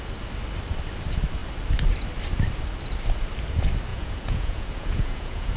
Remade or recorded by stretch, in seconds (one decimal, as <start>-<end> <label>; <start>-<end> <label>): 0.0-3.9 recorded; 3.9-5.6 remade